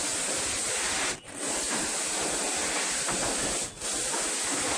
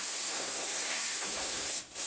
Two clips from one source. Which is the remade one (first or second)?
second